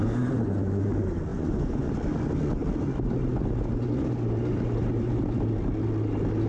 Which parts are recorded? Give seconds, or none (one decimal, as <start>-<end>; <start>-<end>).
0.0-1.3; 1.9-6.5